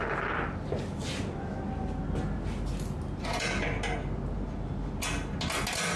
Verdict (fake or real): real